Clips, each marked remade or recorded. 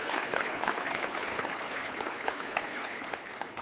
remade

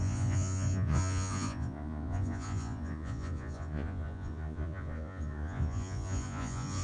remade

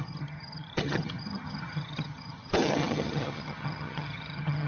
remade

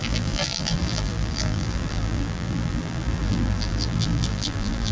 remade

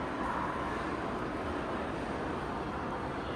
recorded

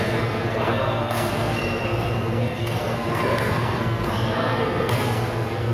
remade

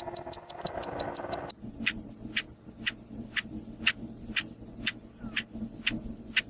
recorded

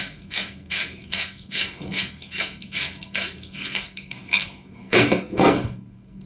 remade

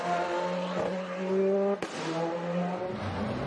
recorded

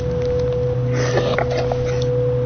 recorded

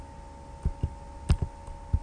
recorded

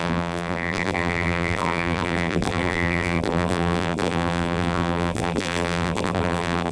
remade